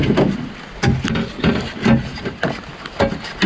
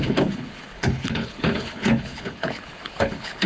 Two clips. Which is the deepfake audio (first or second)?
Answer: second